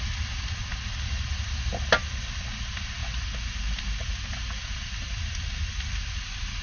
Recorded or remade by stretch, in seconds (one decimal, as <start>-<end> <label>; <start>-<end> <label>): 0.0-6.6 recorded